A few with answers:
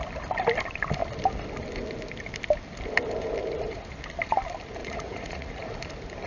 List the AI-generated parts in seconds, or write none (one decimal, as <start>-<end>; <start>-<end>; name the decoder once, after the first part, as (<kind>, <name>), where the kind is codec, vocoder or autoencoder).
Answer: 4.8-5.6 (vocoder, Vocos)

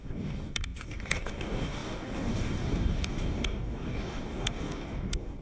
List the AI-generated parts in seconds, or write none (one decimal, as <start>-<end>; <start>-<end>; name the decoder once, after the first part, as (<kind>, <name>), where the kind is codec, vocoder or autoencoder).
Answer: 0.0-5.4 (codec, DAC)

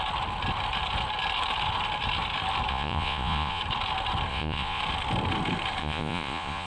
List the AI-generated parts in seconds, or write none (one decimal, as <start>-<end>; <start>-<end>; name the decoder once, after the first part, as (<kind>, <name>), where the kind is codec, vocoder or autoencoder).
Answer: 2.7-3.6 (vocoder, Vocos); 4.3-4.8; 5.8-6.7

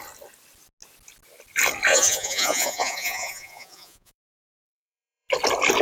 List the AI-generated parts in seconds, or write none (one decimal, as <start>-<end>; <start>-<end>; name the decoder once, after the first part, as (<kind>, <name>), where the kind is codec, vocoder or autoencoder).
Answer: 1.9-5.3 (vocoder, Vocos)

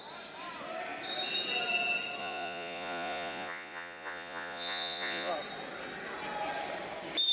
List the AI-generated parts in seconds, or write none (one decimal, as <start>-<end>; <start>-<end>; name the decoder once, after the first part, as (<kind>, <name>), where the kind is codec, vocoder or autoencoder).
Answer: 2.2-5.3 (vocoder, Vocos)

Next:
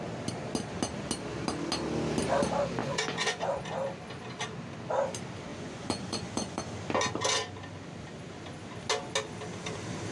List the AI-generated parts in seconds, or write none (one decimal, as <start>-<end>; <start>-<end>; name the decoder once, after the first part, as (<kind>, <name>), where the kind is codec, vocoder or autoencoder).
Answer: 2.8-3.6 (vocoder, Vocos); 5.5-6.6